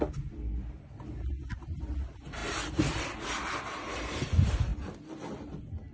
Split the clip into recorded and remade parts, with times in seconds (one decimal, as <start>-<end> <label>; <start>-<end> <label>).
0.0-5.9 recorded